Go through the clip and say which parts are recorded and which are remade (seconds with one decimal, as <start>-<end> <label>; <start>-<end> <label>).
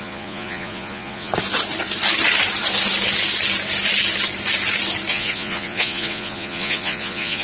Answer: 0.0-1.3 remade; 1.3-5.1 recorded; 5.1-7.4 remade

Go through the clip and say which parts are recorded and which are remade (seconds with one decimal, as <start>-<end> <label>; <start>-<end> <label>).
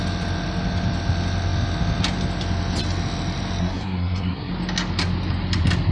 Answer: 0.0-3.6 recorded; 3.6-4.5 remade; 4.5-5.9 recorded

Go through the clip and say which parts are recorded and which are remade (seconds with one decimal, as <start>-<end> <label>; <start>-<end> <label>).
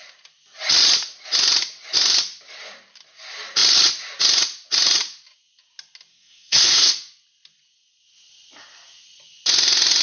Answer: 0.0-6.1 recorded; 6.1-6.9 remade; 6.9-10.0 recorded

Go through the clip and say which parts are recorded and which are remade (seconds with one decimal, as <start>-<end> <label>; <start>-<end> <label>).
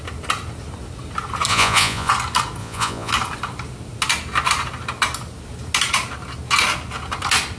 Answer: 0.0-1.5 recorded; 1.5-2.1 remade; 2.1-2.6 recorded; 2.6-3.1 remade; 3.1-7.6 recorded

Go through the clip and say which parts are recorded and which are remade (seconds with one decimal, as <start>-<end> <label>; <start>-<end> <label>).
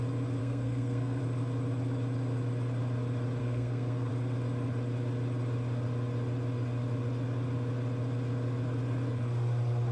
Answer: 0.0-0.4 recorded; 0.4-1.2 remade; 1.2-3.4 recorded; 3.4-4.1 remade; 4.1-9.9 recorded